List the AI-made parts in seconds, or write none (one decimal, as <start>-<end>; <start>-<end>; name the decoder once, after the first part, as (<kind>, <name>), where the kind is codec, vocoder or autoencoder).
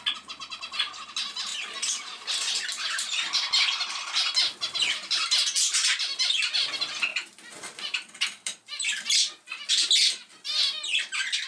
none